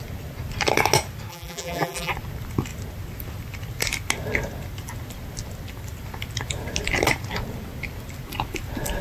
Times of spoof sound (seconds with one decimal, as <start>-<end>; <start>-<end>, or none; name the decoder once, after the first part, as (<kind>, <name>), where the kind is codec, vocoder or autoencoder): 1.3-2.1 (vocoder, BigVGAN v2)